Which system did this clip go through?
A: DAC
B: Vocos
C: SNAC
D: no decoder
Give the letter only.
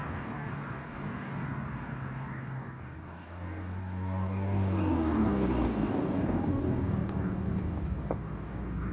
A